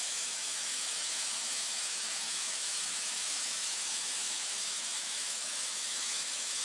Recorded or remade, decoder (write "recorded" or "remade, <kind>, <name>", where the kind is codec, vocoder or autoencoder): remade, autoencoder, DAC-VAE